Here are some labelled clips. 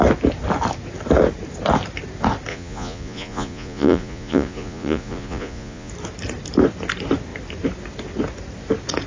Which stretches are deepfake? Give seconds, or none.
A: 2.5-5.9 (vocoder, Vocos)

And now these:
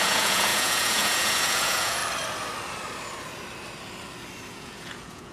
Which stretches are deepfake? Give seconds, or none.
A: 0.0-2.0 (vocoder, Vocos); 4.5-5.3

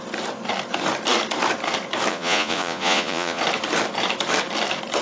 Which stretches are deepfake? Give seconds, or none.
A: 2.1-3.4 (vocoder, Vocos)

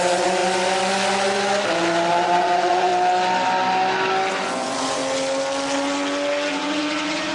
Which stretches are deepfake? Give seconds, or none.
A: 0.0-0.4 (vocoder, Vocos); 2.1-2.9; 4.3-5.0; 6.5-7.3

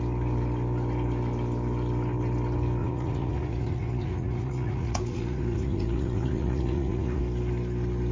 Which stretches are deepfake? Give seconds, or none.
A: 2.8-7.2 (vocoder, Vocos)